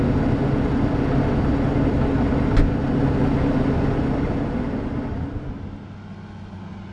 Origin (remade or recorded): recorded